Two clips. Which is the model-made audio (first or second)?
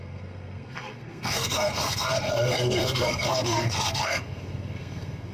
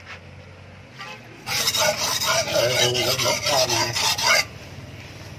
first